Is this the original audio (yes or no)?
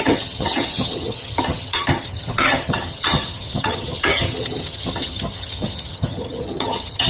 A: no